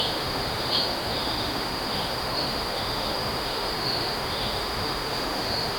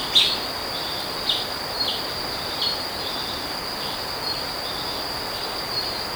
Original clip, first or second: second